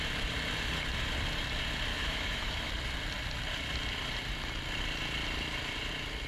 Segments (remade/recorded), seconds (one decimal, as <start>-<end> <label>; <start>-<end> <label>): 0.0-1.9 recorded; 1.9-2.7 remade; 2.7-6.3 recorded